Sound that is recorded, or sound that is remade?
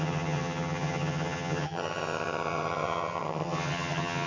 remade